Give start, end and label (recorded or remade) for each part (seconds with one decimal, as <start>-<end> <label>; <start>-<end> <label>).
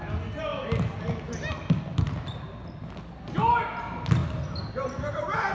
0.0-5.5 recorded